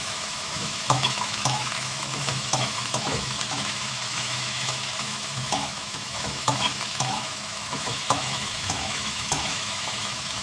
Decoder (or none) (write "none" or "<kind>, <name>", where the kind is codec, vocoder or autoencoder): autoencoder, DAC-VAE